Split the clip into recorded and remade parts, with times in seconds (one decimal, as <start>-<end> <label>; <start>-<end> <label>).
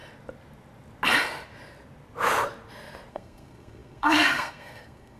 0.0-3.1 recorded; 3.1-5.2 remade